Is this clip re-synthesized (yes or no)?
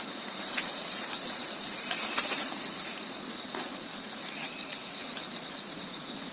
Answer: yes